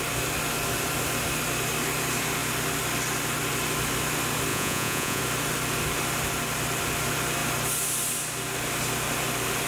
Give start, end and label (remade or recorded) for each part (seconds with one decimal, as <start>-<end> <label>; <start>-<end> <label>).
0.0-4.5 recorded; 4.5-5.2 remade; 5.2-9.7 recorded